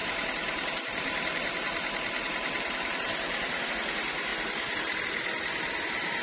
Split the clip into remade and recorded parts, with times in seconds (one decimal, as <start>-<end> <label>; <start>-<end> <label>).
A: 0.0-3.7 remade; 3.7-4.3 recorded; 4.3-5.0 remade; 5.0-6.2 recorded

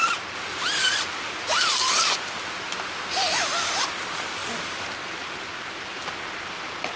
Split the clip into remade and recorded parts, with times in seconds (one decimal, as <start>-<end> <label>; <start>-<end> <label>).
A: 0.0-0.5 recorded; 0.5-2.3 remade; 2.3-7.0 recorded

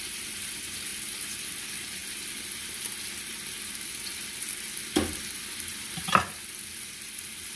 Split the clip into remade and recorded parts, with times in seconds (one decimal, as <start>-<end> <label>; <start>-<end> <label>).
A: 0.0-2.0 remade; 2.0-5.9 recorded; 5.9-6.4 remade; 6.4-7.6 recorded

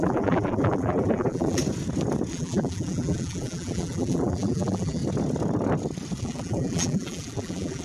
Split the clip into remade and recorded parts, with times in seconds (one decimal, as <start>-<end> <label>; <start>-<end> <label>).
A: 0.0-1.6 remade; 1.6-2.3 recorded; 2.3-5.0 remade; 5.0-6.2 recorded; 6.2-7.8 remade

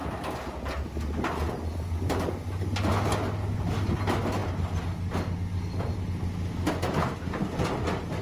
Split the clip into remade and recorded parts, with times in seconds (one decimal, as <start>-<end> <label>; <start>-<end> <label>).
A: 0.0-8.2 recorded

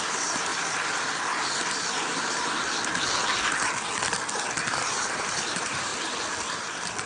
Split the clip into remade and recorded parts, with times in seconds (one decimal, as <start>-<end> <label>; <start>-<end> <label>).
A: 0.0-0.5 remade; 0.5-4.8 recorded; 4.8-5.9 remade; 5.9-7.1 recorded

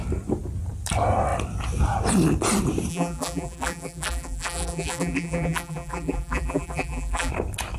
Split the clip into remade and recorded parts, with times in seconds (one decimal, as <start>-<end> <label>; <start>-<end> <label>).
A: 0.0-2.9 recorded; 2.9-7.3 remade; 7.3-7.8 recorded